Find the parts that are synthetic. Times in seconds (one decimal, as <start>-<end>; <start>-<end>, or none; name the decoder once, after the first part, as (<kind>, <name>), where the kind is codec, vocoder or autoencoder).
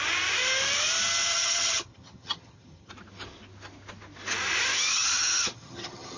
1.3-2.9 (vocoder, HiFi-GAN); 4.9-6.2